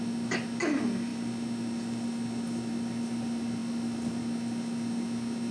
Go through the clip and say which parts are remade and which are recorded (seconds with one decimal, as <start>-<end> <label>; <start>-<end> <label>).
0.0-5.5 recorded